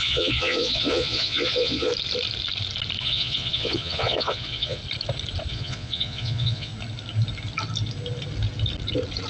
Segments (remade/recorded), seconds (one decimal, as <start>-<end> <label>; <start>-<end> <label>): 0.0-1.9 remade; 1.9-3.0 recorded; 3.0-4.8 remade; 4.8-5.5 recorded; 5.5-6.7 remade; 6.7-9.3 recorded